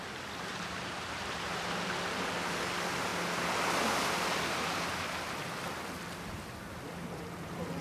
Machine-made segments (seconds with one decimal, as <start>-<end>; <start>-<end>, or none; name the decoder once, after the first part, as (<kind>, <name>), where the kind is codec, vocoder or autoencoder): 0.5-1.6 (vocoder, BigVGAN v2)